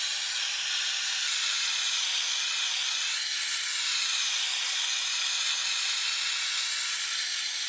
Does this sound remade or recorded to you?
recorded